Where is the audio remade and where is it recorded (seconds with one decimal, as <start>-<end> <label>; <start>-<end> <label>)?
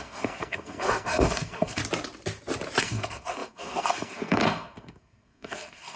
0.0-1.8 remade; 1.8-2.8 recorded; 2.8-6.0 remade